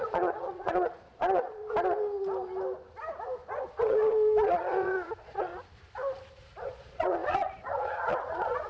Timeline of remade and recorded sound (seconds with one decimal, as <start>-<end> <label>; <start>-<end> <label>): 0.0-1.6 remade; 1.6-3.7 recorded; 3.7-5.5 remade; 5.5-6.6 recorded; 6.6-8.7 remade